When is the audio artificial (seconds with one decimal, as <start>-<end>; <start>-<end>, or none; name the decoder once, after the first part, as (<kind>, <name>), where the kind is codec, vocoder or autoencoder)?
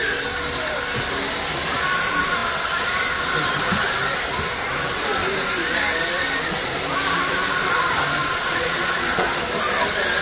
8.2-9.4 (vocoder, Vocos)